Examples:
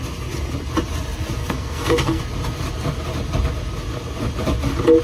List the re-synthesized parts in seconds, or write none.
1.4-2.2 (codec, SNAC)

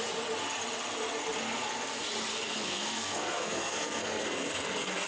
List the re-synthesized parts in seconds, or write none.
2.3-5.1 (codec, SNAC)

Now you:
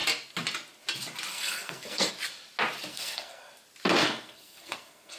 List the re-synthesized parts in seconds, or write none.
1.3-2.1 (codec, SNAC); 2.9-3.5; 4.0-5.2

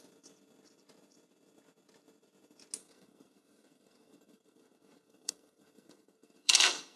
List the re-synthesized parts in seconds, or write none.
2.8-7.0 (codec, SNAC)

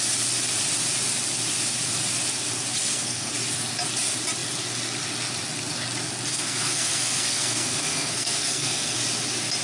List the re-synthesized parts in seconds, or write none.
2.8-3.3 (codec, SNAC); 6.3-9.0